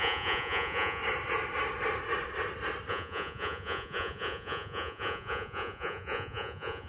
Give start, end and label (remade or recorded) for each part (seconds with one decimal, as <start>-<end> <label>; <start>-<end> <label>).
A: 0.0-1.0 remade; 1.0-2.9 recorded; 2.9-6.9 remade